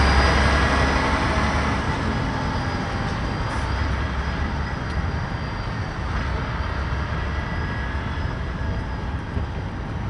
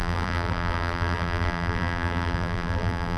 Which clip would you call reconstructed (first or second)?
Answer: second